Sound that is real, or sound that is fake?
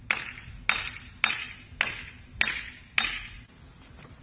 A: real